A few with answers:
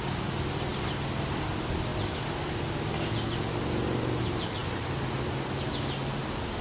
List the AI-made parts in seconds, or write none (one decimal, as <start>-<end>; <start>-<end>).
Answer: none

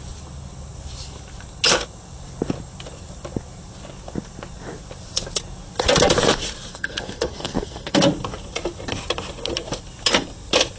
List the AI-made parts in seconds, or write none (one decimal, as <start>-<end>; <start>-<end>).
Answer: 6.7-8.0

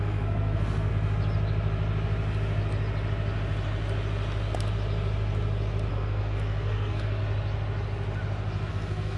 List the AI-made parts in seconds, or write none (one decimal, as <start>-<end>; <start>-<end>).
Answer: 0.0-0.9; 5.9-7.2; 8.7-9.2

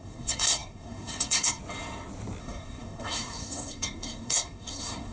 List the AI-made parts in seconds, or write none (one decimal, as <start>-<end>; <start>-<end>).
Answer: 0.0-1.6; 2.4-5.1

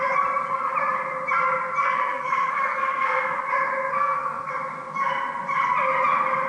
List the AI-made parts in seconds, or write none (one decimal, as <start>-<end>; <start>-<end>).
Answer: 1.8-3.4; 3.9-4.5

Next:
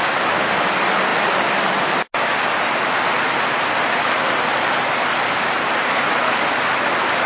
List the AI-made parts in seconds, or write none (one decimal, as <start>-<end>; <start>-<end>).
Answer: none

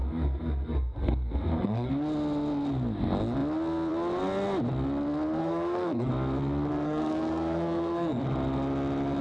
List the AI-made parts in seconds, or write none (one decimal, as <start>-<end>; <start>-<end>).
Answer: 0.0-1.9; 5.4-6.1; 6.7-8.2